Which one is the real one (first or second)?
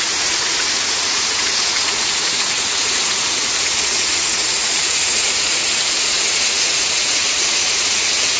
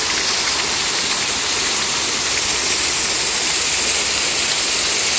second